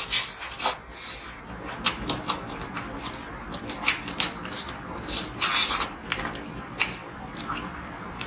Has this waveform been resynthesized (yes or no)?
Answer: no